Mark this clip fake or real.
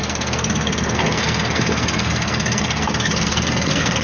fake